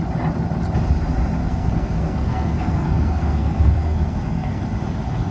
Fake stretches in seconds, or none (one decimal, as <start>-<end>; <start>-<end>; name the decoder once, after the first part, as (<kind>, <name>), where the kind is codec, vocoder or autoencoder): 1.4-4.6 (codec, SNAC)